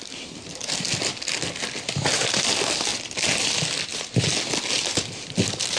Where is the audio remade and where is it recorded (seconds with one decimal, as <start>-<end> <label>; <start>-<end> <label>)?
0.0-5.8 recorded